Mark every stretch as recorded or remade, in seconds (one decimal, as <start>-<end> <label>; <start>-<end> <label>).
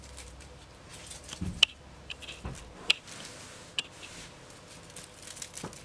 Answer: 0.0-2.2 remade; 2.2-5.8 recorded